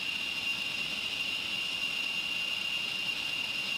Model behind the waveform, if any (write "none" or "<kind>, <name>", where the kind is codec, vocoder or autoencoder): none